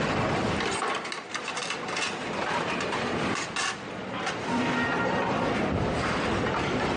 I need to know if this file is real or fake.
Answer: fake